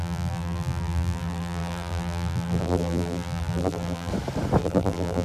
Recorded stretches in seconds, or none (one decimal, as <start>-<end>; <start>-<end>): 4.1-4.6